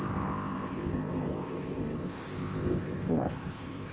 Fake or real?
fake